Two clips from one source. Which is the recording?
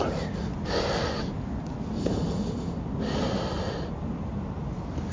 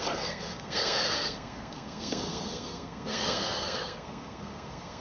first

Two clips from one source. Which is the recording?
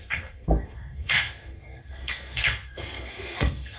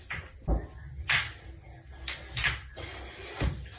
second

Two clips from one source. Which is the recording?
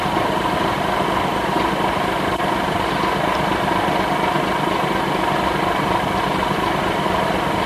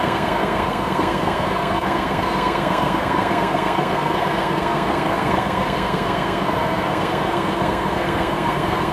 first